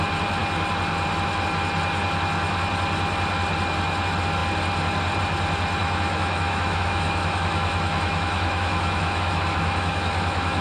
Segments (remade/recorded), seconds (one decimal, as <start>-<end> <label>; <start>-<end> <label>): 0.0-5.8 recorded; 5.8-10.6 remade